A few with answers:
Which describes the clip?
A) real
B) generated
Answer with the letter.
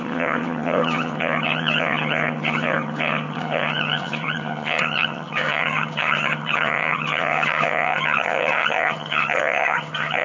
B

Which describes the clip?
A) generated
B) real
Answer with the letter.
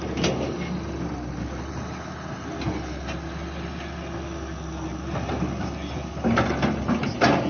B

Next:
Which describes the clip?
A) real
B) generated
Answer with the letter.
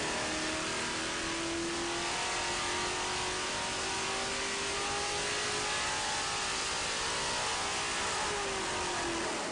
A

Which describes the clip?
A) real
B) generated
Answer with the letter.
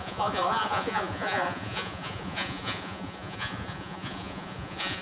B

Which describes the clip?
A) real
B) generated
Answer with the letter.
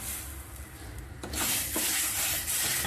A